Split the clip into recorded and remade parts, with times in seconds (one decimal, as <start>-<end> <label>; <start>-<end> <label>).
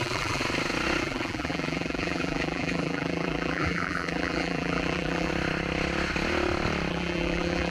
0.0-0.4 remade; 0.4-1.0 recorded; 1.0-5.3 remade; 5.3-6.9 recorded; 6.9-7.7 remade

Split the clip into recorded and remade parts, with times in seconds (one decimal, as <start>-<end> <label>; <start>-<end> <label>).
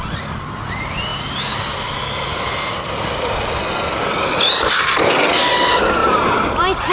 0.0-6.0 recorded; 6.0-6.5 remade; 6.5-6.9 recorded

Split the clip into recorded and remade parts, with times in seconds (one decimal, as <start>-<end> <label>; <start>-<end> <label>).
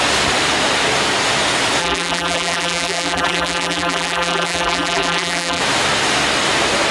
0.0-1.8 recorded; 1.8-5.6 remade; 5.6-6.9 recorded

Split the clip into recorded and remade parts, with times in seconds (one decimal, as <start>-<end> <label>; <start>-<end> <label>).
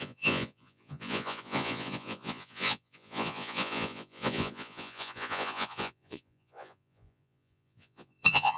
0.0-8.6 remade